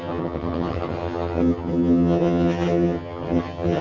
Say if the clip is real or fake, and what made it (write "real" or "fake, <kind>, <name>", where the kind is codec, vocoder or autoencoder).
fake, vocoder, HiFi-GAN